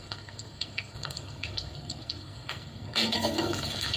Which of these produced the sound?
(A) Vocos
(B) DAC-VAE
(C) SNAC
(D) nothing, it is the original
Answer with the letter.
C